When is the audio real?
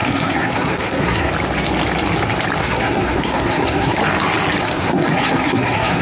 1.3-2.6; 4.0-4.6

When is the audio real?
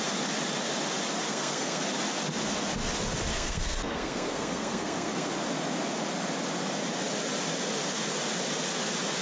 0.0-1.3; 1.8-3.3; 5.3-9.2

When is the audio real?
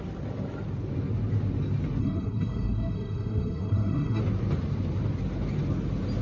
0.0-2.0; 4.2-6.2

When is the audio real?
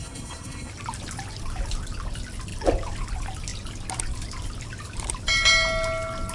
0.7-6.3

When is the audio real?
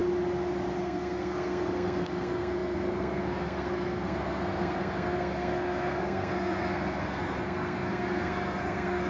0.0-0.8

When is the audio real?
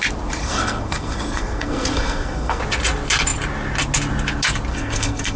0.0-0.4; 2.6-4.7